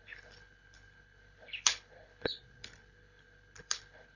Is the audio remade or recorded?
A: remade